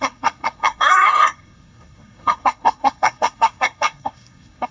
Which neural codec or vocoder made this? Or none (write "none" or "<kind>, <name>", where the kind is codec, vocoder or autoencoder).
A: codec, SNAC